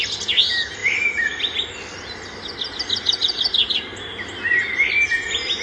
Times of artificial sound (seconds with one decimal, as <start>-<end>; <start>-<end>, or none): 0.8-1.7; 3.2-4.9